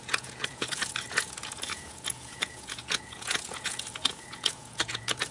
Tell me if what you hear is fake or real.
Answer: fake